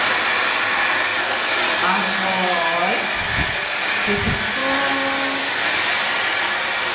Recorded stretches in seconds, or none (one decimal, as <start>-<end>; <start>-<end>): 0.0-6.9